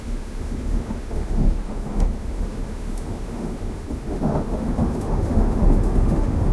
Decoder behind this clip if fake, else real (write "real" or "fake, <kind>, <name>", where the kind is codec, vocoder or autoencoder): fake, autoencoder, DAC-VAE